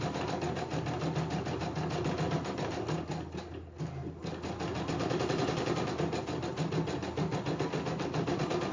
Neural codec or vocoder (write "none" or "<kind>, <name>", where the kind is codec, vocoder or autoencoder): none